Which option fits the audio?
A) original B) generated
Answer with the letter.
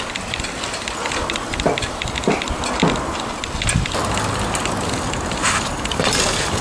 A